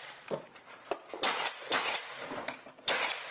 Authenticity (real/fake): fake